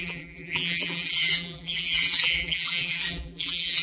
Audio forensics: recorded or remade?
remade